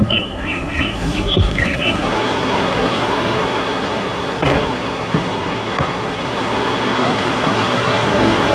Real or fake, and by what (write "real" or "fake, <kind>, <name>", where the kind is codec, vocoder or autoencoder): fake, codec, SNAC